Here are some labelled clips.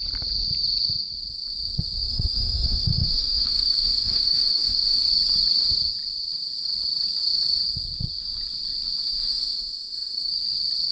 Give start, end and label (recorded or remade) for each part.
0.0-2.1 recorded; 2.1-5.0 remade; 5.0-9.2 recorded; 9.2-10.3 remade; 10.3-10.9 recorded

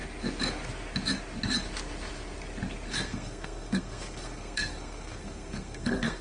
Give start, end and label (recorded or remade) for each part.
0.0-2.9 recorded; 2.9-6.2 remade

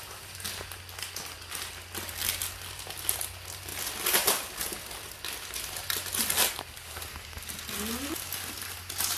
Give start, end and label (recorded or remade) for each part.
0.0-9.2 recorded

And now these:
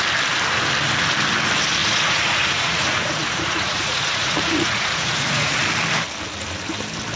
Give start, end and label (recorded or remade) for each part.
0.0-1.8 recorded; 1.8-5.6 remade; 5.6-7.2 recorded

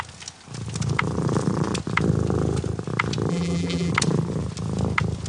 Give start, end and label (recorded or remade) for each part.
0.0-3.3 recorded; 3.3-3.9 remade; 3.9-5.3 recorded

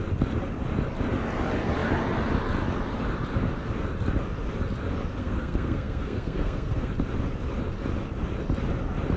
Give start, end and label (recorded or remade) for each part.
0.0-5.2 recorded; 5.2-6.9 remade; 6.9-9.2 recorded

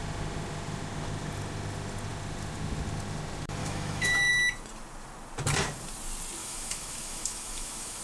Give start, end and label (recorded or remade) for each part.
0.0-3.6 recorded; 3.6-4.3 remade; 4.3-6.4 recorded; 6.4-8.0 remade